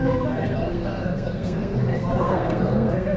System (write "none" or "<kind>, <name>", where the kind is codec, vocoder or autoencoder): codec, SNAC